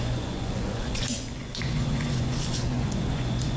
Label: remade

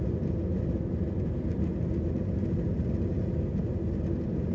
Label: recorded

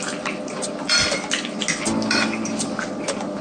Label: recorded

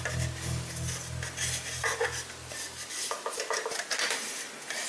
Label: recorded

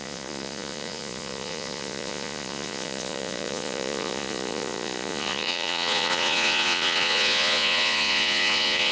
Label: remade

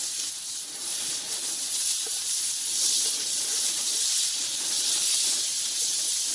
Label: remade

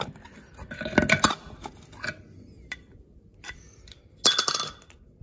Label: recorded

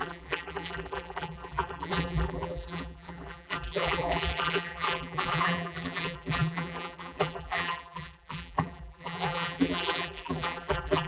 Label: remade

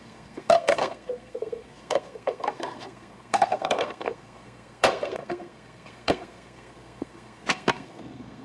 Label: remade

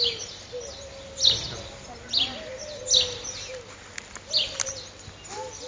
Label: recorded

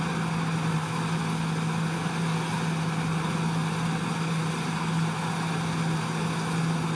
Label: recorded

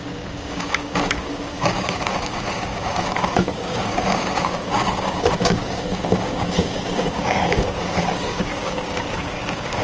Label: remade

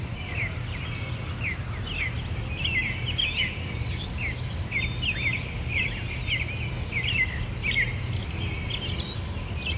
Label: recorded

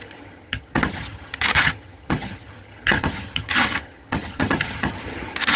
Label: remade